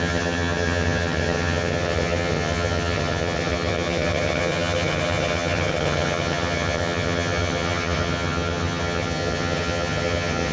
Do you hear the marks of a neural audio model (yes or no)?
yes